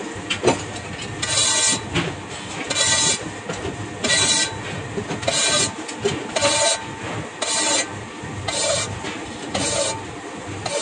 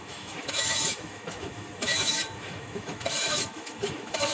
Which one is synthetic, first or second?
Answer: second